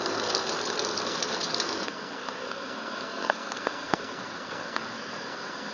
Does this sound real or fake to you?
fake